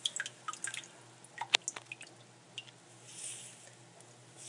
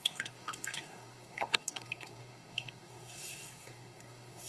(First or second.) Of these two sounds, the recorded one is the first